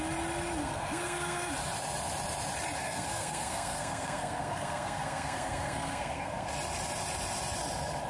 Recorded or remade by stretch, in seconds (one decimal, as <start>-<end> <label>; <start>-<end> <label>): 0.0-0.6 recorded; 0.6-1.5 remade; 1.5-2.8 recorded; 2.8-6.5 remade; 6.5-8.1 recorded